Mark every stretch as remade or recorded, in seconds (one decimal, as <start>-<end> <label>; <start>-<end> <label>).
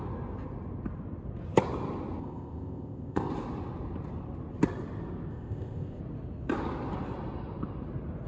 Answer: 0.0-2.2 recorded; 2.2-3.3 remade; 3.3-5.3 recorded; 5.3-6.0 remade; 6.0-8.3 recorded